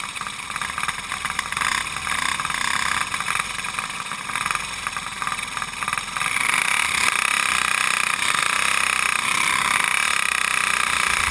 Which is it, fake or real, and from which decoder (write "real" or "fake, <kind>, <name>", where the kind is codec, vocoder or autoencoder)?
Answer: real